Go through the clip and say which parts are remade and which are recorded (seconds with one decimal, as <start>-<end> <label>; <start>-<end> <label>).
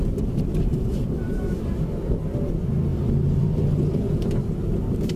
0.0-0.7 recorded; 0.7-1.4 remade; 1.4-2.9 recorded; 2.9-4.3 remade; 4.3-5.2 recorded